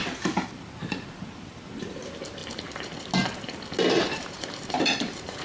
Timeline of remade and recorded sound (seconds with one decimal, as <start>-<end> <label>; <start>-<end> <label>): 0.0-0.9 recorded; 0.9-2.4 remade; 2.4-3.9 recorded; 3.9-5.4 remade

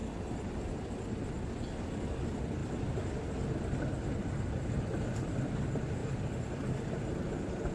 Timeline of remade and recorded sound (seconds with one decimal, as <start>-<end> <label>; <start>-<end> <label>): 0.0-0.7 remade; 0.7-6.0 recorded; 6.0-7.0 remade; 7.0-7.7 recorded

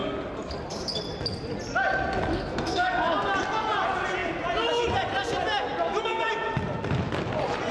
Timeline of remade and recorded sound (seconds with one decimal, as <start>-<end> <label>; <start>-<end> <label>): 0.0-2.3 recorded; 2.3-3.1 remade; 3.1-7.7 recorded

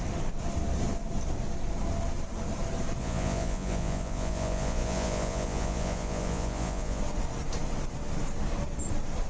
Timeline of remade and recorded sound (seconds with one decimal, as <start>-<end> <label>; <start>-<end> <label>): 0.0-3.0 recorded; 3.0-7.0 remade; 7.0-9.3 recorded

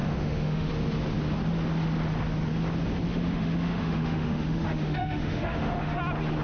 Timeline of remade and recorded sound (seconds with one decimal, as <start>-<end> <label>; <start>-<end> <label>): 0.0-0.7 remade; 0.7-3.1 recorded; 3.1-6.0 remade; 6.0-6.4 recorded

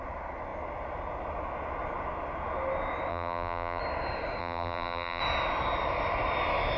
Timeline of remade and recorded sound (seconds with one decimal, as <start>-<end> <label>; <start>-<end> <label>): 0.0-3.1 recorded; 3.1-3.8 remade; 3.8-4.4 recorded; 4.4-5.2 remade; 5.2-6.8 recorded

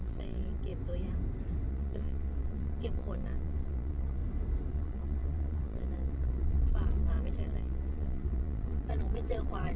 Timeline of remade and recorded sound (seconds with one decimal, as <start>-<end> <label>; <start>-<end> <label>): 0.0-0.7 remade; 0.7-1.7 recorded; 1.7-4.2 remade; 4.2-4.7 recorded; 4.7-9.8 remade

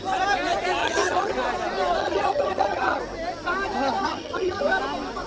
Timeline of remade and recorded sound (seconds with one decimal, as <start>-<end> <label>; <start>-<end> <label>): 0.0-0.8 recorded; 0.8-1.3 remade; 1.3-2.0 recorded; 2.0-3.0 remade; 3.0-4.0 recorded; 4.0-4.6 remade; 4.6-5.3 recorded